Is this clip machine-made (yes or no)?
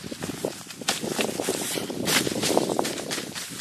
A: yes